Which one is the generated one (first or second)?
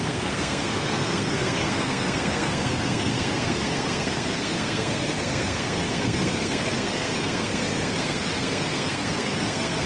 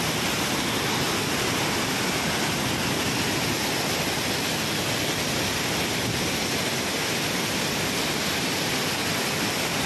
first